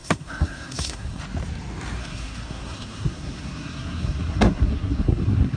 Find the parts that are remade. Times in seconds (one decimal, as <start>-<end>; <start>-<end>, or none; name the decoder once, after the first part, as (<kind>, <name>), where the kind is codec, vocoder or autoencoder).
0.0-1.2 (codec, SNAC); 2.0-5.6